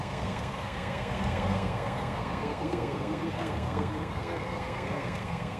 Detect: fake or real fake